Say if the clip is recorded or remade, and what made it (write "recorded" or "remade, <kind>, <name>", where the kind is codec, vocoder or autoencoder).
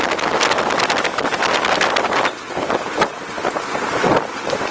recorded